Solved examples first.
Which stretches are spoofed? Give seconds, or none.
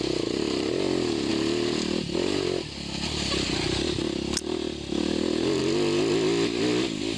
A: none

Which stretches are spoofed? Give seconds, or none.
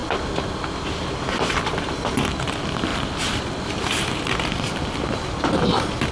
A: 2.9-5.0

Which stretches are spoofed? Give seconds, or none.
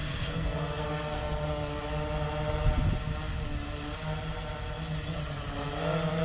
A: 0.0-1.8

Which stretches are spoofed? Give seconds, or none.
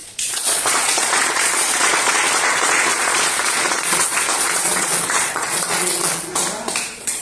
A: 0.0-6.3; 6.8-7.2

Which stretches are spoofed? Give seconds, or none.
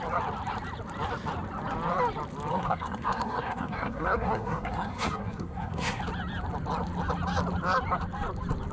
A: 2.5-6.0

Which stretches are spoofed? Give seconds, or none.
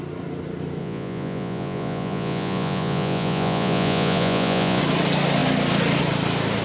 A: 0.8-4.8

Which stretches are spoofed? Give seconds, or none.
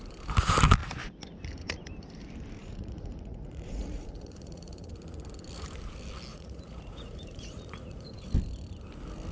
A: 2.6-4.9; 6.3-8.3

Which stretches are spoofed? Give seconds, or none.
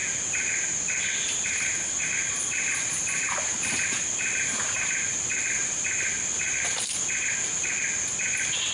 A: none